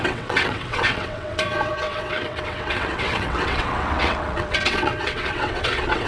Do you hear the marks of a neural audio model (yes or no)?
yes